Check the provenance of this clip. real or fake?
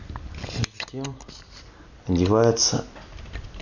real